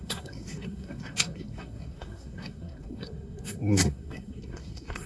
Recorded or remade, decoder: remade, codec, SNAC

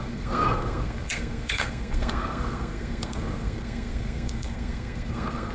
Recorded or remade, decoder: remade, codec, SNAC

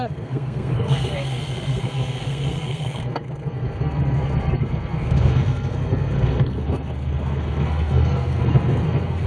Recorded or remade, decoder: remade, codec, SNAC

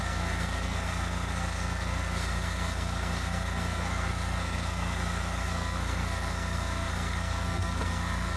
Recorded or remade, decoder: remade, codec, SNAC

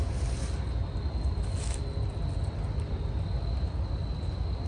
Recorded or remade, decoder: recorded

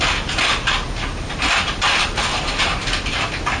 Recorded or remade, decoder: recorded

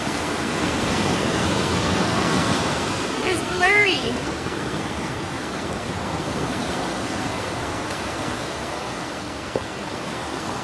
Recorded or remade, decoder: remade, codec, SNAC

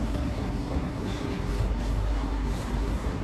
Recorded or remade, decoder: remade, codec, SNAC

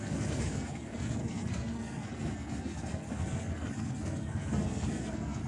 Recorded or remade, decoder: remade, codec, SNAC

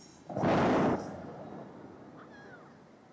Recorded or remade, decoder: recorded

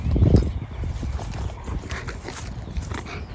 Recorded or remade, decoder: recorded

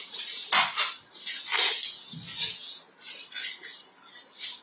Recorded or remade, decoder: recorded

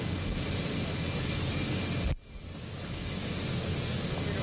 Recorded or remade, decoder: recorded